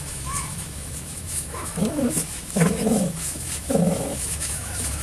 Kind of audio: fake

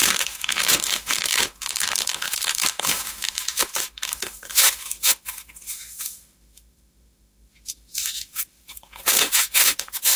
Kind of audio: fake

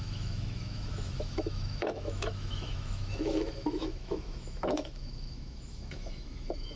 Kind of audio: fake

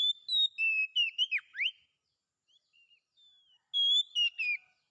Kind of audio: real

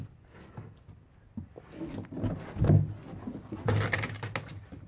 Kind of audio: real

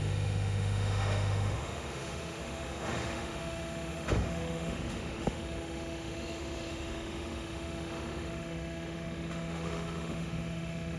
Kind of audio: fake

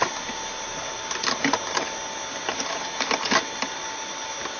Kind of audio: real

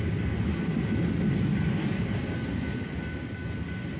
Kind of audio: real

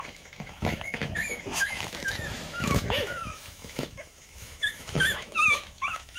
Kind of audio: fake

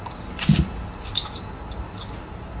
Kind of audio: real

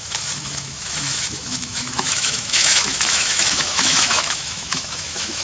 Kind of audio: fake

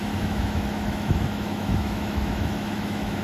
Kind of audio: fake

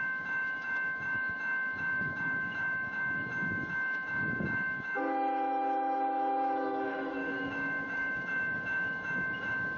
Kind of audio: fake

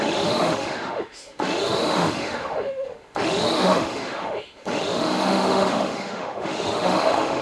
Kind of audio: fake